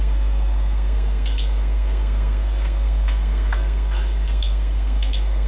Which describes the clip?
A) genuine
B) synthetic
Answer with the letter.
B